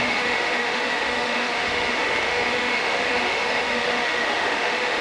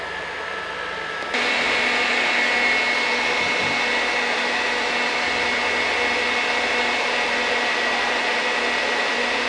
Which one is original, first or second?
second